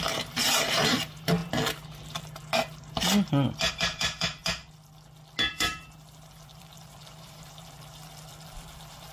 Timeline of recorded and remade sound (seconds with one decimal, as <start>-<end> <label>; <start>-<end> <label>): 0.0-1.4 remade; 1.4-3.7 recorded; 3.7-4.4 remade; 4.4-5.5 recorded; 5.5-9.1 remade

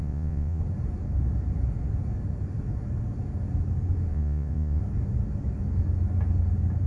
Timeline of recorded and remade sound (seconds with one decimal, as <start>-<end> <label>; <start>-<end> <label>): 0.0-0.6 remade; 0.6-4.1 recorded; 4.1-4.8 remade; 4.8-6.9 recorded

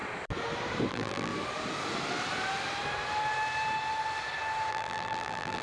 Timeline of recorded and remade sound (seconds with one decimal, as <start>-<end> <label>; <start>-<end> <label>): 0.0-0.9 recorded; 0.9-1.3 remade; 1.3-4.7 recorded; 4.7-5.6 remade

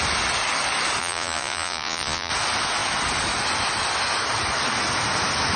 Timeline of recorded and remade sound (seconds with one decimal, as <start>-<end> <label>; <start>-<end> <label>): 0.0-1.0 recorded; 1.0-2.3 remade; 2.3-5.6 recorded

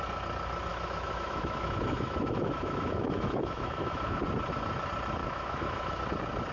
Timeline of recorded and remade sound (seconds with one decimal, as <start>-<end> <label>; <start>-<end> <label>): 0.0-0.7 recorded; 0.7-4.2 remade; 4.2-5.2 recorded; 5.2-6.0 remade; 6.0-6.5 recorded

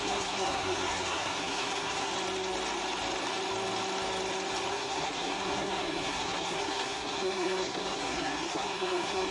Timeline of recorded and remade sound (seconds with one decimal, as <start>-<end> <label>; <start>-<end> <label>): 0.0-2.1 remade; 2.1-4.7 recorded; 4.7-9.3 remade

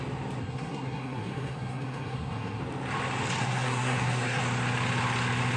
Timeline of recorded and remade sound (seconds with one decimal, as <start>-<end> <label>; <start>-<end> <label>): 0.0-0.4 recorded; 0.4-2.6 remade; 2.6-3.4 recorded; 3.4-4.4 remade; 4.4-5.6 recorded

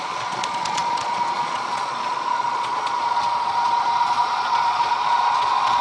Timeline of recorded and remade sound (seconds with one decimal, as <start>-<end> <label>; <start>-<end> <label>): 0.0-5.8 remade